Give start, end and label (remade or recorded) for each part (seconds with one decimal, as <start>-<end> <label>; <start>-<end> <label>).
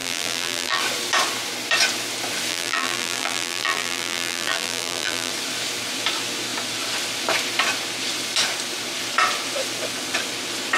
0.0-0.8 remade; 0.8-2.5 recorded; 2.5-5.3 remade; 5.3-10.8 recorded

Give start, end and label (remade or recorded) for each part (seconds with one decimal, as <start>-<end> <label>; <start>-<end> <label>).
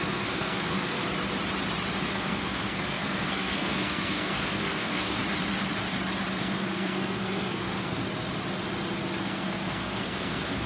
0.0-1.0 remade; 1.0-2.1 recorded; 2.1-5.2 remade; 5.2-6.4 recorded; 6.4-8.0 remade; 8.0-9.2 recorded; 9.2-10.7 remade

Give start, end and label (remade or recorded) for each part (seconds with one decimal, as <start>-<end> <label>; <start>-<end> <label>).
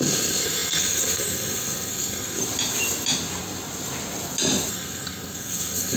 0.0-2.4 remade; 2.4-4.7 recorded; 4.7-6.0 remade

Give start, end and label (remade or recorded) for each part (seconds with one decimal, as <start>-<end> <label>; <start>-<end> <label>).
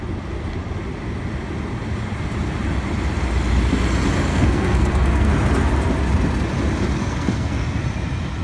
0.0-4.3 recorded; 4.3-5.3 remade; 5.3-7.0 recorded; 7.0-7.8 remade; 7.8-8.4 recorded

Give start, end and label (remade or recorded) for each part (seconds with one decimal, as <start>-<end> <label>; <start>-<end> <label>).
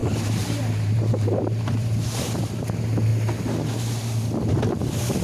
0.0-2.2 remade; 2.2-5.2 recorded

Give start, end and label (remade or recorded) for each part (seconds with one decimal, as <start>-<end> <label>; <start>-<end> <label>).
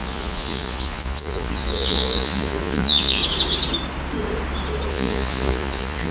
0.0-3.2 remade; 3.2-4.9 recorded; 4.9-6.1 remade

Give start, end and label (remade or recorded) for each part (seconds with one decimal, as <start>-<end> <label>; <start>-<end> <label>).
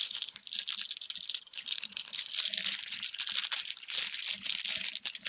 0.0-0.4 remade; 0.4-1.3 recorded; 1.3-2.3 remade; 2.3-5.3 recorded